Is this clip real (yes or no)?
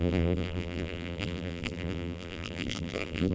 no